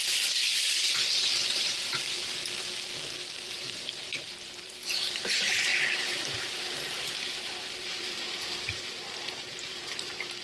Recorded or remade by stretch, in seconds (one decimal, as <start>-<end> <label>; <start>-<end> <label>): 0.0-0.7 recorded; 0.7-2.4 remade; 2.4-3.5 recorded; 3.5-10.4 remade